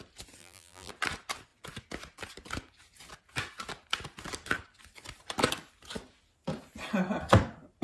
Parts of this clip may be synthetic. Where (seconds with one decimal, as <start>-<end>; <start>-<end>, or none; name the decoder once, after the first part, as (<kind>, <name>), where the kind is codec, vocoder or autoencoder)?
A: 0.4-0.9 (vocoder, BigVGAN v2)